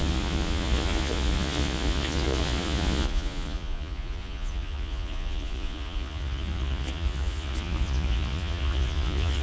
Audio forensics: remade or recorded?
remade